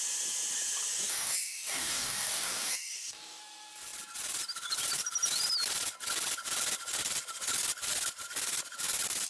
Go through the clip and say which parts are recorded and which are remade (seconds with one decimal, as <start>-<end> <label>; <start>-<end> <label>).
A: 0.0-0.9 recorded; 0.9-3.4 remade; 3.4-9.3 recorded